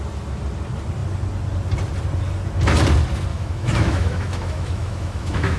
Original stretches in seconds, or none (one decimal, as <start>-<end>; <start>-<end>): 0.0-3.3